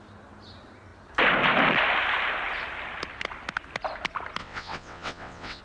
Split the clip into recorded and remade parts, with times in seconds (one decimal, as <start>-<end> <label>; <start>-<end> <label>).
0.0-4.4 recorded; 4.4-5.6 remade